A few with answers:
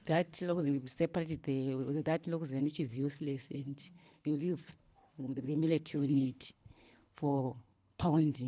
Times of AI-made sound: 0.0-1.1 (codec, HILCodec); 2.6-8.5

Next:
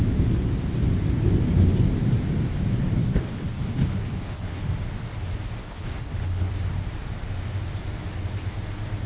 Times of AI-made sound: 3.0-4.6 (codec, HILCodec); 5.6-6.5

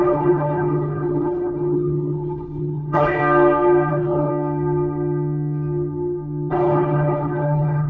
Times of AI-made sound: 0.0-3.2 (codec, HILCodec); 3.9-4.3; 6.5-7.9

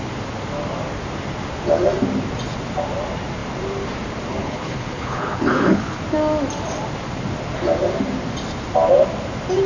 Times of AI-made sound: 4.4-6.0 (codec, HILCodec)

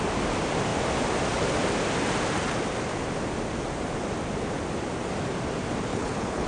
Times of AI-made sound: 5.9-6.5 (codec, HILCodec)

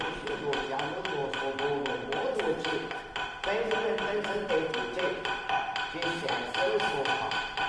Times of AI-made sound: none